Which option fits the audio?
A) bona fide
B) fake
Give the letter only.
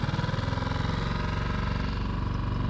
A